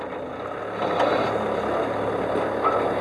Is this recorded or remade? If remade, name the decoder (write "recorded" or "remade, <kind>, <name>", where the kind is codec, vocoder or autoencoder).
recorded